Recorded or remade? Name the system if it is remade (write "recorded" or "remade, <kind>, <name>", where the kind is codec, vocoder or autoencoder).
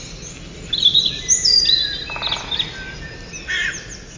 recorded